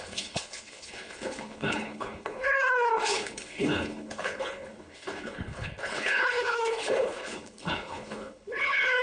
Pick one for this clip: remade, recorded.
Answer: remade